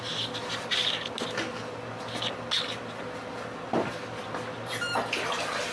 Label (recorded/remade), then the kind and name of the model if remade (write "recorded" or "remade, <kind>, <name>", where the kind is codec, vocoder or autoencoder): recorded